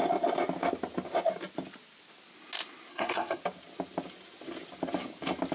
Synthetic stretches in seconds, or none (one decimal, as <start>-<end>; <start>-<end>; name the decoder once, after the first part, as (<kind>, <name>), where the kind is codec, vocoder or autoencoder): 2.9-3.4 (codec, SNAC)